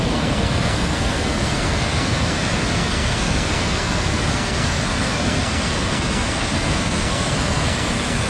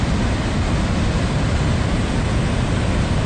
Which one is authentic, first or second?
second